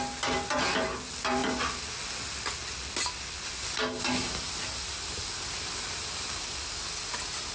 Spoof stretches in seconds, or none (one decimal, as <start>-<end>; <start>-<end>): none